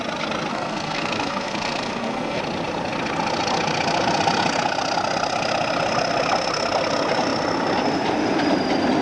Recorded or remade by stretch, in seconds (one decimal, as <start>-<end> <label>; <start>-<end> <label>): 0.0-0.5 recorded; 0.5-2.4 remade; 2.4-9.0 recorded